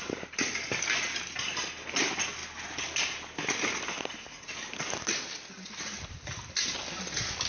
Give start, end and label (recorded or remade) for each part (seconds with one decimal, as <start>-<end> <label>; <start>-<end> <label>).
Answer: 0.0-7.5 recorded